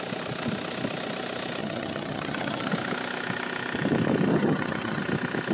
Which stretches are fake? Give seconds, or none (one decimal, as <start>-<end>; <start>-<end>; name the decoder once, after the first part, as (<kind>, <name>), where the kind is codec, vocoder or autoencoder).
1.6-2.7 (vocoder, HiFi-GAN); 4.3-5.0

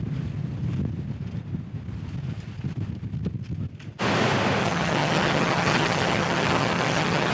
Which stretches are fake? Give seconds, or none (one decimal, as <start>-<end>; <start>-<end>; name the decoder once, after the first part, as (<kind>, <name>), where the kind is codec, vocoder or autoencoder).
4.6-7.3 (vocoder, HiFi-GAN)

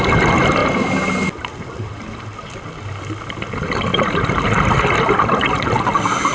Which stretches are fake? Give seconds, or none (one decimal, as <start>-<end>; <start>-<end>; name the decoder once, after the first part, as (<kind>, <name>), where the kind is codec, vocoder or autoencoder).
none

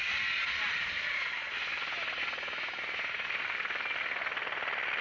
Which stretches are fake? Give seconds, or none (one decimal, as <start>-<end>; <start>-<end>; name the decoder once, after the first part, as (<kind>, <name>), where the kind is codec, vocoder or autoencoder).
none